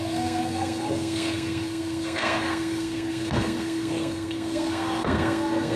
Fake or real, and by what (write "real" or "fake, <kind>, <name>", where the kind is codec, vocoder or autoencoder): fake, codec, SNAC